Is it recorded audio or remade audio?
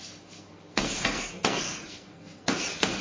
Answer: remade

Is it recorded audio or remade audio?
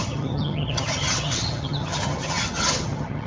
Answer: remade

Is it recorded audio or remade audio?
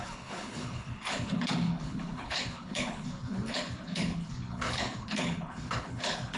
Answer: remade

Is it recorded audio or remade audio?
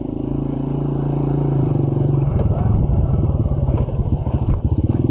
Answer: remade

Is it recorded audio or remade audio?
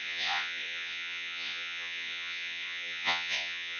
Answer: remade